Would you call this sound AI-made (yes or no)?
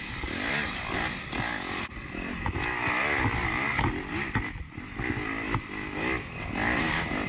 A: no